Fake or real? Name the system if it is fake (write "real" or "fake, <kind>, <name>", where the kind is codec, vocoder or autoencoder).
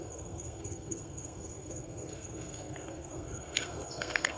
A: fake, codec, SNAC